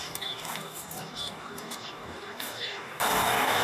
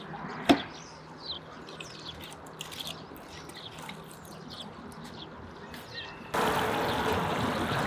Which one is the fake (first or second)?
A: first